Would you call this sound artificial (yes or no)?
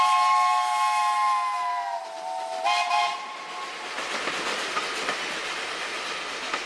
no